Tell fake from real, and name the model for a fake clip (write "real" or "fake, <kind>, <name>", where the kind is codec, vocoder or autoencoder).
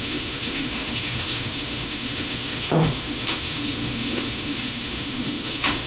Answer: fake, autoencoder, DAC-VAE